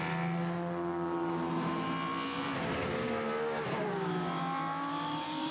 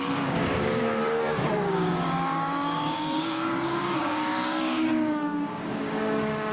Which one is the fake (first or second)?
second